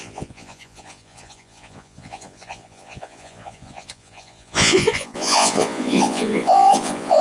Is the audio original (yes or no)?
no